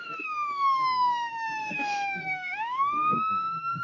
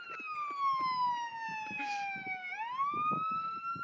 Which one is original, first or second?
second